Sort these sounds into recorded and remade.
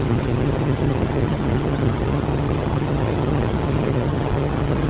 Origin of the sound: remade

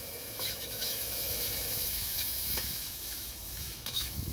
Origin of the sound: remade